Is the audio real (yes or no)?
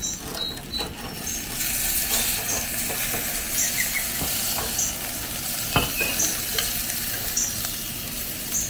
yes